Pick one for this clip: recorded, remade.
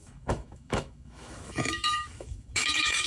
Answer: remade